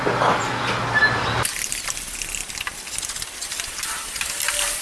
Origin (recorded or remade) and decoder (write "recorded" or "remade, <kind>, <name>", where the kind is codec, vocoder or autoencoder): recorded